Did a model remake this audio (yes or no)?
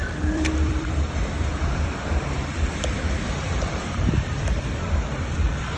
yes